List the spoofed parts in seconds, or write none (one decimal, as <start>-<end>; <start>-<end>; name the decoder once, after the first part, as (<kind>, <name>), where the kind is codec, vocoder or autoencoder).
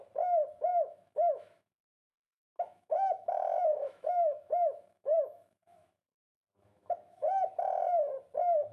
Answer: 0.7-1.7 (autoencoder, DAC-VAE); 2.3-7.5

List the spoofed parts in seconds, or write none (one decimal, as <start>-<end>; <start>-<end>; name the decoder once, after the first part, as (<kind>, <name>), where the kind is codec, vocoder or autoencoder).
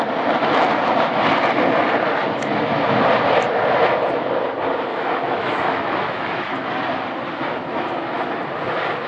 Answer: 4.9-6.6 (autoencoder, DAC-VAE)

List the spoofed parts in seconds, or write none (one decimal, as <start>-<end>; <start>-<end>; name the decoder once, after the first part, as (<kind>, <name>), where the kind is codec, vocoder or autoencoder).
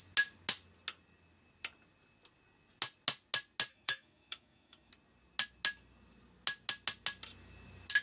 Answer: 3.7-4.9 (autoencoder, DAC-VAE)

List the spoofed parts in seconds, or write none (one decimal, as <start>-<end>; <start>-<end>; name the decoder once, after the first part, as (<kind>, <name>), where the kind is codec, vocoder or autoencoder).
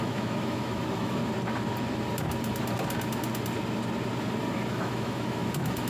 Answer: 0.0-1.2 (autoencoder, DAC-VAE); 4.7-5.9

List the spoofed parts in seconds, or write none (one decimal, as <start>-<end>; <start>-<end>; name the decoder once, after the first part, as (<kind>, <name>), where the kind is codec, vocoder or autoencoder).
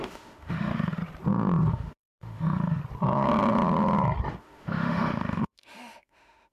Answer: 0.0-1.0 (autoencoder, DAC-VAE); 1.7-2.8; 4.4-6.5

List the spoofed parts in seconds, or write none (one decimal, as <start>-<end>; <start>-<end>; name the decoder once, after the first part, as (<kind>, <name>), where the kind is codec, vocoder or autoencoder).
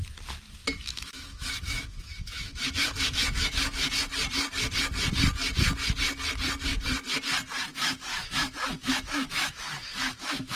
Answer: 0.6-3.9 (autoencoder, DAC-VAE); 7.7-10.6